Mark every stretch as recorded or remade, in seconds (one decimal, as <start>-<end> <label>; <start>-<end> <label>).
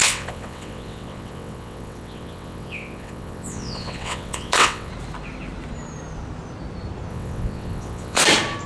0.0-4.9 remade; 4.9-7.1 recorded; 7.1-8.2 remade; 8.2-8.7 recorded